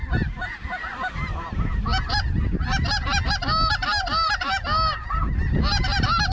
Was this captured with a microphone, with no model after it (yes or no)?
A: yes